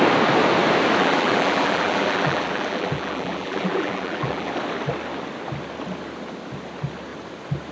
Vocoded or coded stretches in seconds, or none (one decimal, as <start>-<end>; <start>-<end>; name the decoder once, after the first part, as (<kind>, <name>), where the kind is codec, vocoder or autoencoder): 1.0-4.5 (vocoder, BigVGAN v2)